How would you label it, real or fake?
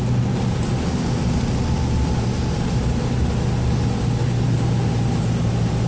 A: real